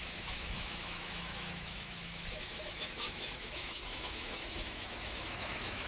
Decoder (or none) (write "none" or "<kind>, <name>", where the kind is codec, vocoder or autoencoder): autoencoder, DAC-VAE